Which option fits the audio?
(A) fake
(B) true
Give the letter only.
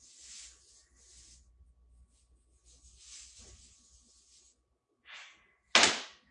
B